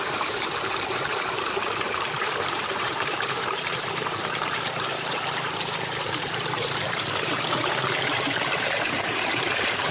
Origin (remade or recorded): remade